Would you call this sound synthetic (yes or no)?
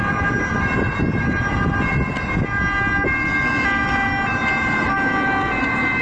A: no